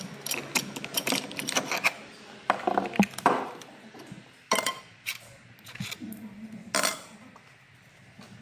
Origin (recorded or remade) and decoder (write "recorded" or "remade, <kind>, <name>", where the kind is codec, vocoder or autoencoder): recorded